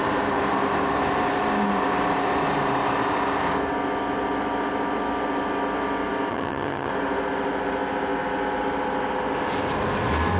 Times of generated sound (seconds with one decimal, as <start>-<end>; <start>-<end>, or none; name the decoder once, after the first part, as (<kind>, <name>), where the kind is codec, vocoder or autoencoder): 6.3-6.9 (vocoder, HiFi-GAN)